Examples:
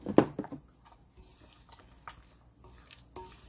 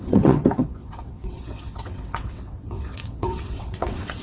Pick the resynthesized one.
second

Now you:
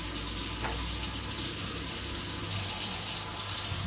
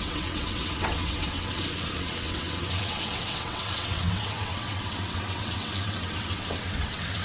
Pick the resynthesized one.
second